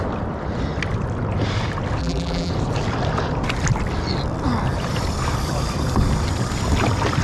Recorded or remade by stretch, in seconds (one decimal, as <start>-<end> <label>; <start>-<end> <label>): 0.0-2.0 recorded; 2.0-2.5 remade; 2.5-7.2 recorded